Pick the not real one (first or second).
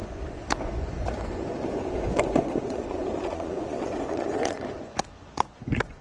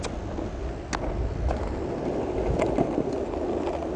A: first